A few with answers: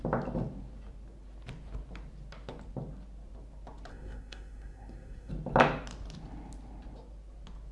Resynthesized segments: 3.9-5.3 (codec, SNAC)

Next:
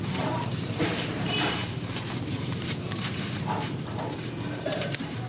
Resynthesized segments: 0.0-5.3 (vocoder, BigVGAN v2)

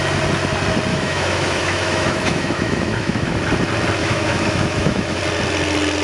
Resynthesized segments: 0.9-3.4 (autoencoder, DAC-VAE); 4.0-5.2

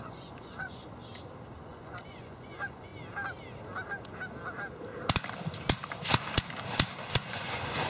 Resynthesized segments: 0.0-1.0 (vocoder, Vocos); 1.6-2.9; 7.2-7.9

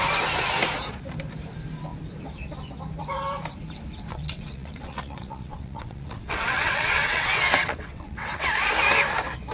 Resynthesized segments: 4.1-8.5 (vocoder, WaveNeXt)

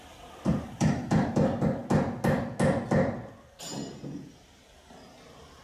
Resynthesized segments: 0.5-1.3 (vocoder, BigVGAN v2)

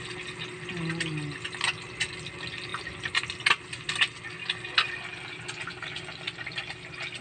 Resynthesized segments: none

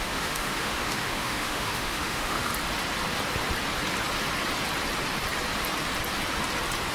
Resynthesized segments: 0.0-2.5 (autoencoder, DAC-VAE)